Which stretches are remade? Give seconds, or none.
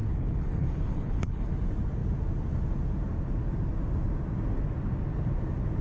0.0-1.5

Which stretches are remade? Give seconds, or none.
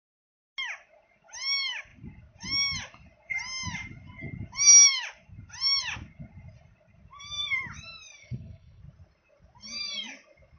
8.2-8.8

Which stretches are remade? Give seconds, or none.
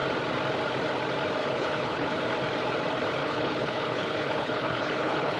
1.4-2.2; 3.2-5.4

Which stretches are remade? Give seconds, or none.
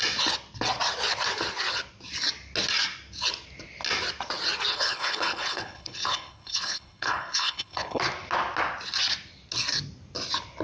4.7-8.0